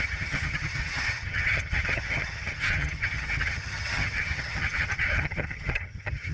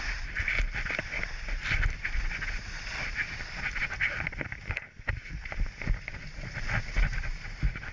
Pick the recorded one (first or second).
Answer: second